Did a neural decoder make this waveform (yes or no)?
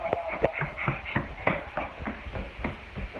no